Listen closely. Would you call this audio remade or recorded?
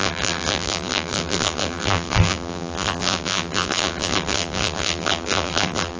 remade